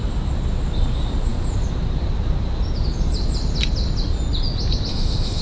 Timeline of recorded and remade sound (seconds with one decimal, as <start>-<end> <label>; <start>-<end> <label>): 0.0-4.9 recorded; 4.9-5.4 remade